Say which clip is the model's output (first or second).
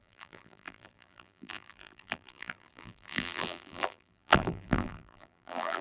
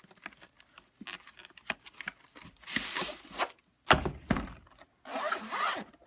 first